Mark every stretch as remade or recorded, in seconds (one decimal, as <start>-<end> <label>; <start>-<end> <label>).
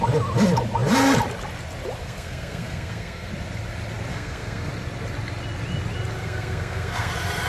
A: 0.0-2.0 recorded; 2.0-3.3 remade; 3.3-4.1 recorded; 4.1-4.7 remade; 4.7-6.2 recorded; 6.2-7.1 remade; 7.1-7.5 recorded